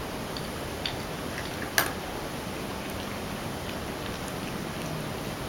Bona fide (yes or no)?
yes